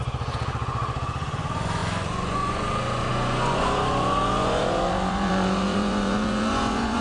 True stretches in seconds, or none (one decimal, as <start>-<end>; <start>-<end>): none